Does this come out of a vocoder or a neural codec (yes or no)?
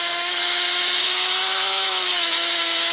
yes